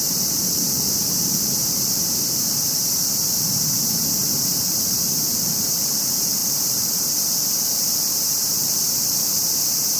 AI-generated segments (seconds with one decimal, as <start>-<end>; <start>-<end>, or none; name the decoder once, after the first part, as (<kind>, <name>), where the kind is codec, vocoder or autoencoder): 0.0-10.0 (vocoder, BigVGAN v2)